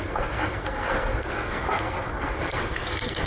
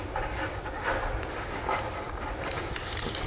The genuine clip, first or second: second